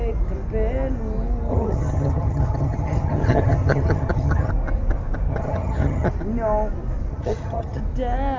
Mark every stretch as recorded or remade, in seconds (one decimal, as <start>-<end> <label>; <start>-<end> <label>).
0.0-1.5 recorded; 1.5-4.5 remade; 4.5-5.3 recorded; 5.3-6.1 remade; 6.1-7.1 recorded; 7.1-7.8 remade; 7.8-8.4 recorded